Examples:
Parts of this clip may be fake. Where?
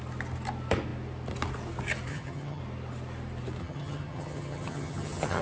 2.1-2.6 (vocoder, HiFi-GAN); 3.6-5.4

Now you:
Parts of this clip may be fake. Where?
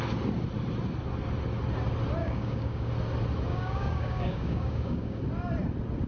2.2-2.9 (codec, DAC); 3.5-5.2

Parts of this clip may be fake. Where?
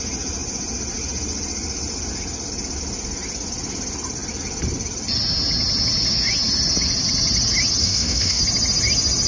7.8-8.4 (codec, SNAC)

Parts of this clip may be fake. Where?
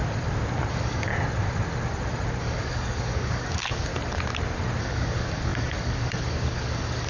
0.7-1.1 (codec, DAC); 2.4-3.9; 4.8-7.1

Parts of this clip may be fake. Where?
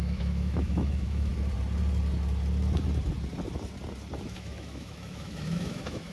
0.0-1.3 (autoencoder, DAC-VAE); 4.2-6.1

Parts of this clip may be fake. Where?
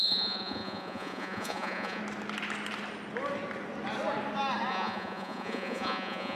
0.0-2.0 (vocoder, Vocos); 4.7-6.4